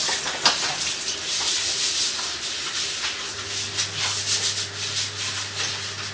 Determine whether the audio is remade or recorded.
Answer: recorded